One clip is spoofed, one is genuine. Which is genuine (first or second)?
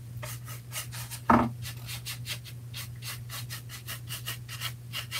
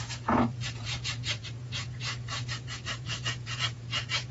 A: first